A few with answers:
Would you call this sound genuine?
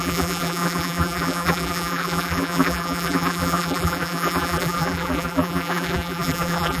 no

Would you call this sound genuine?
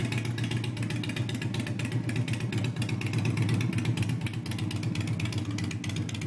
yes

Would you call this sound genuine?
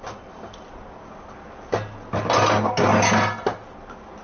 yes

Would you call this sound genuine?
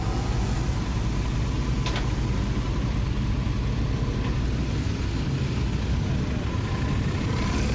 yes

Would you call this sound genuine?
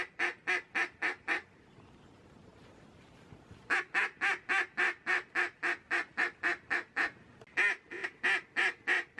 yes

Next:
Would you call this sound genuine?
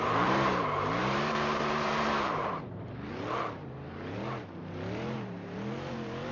no